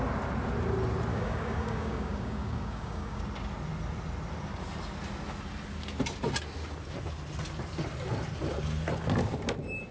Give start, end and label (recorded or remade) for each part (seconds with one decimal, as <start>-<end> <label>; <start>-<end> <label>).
0.0-1.1 recorded; 1.1-3.2 remade; 3.2-9.9 recorded